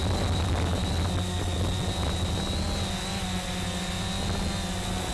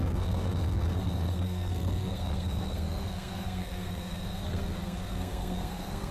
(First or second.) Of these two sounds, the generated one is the second